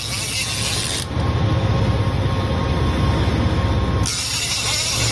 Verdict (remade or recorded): recorded